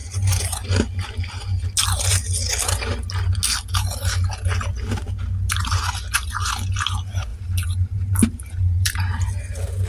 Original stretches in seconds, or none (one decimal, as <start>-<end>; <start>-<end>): 0.7-7.3; 9.2-9.9